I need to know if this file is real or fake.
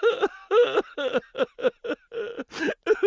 real